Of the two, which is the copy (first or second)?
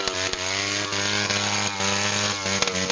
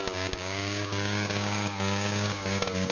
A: second